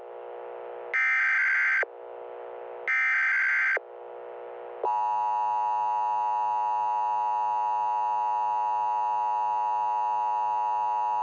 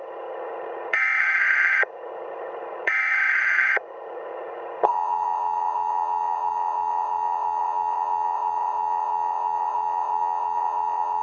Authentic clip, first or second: first